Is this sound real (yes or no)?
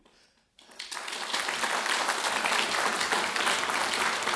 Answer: yes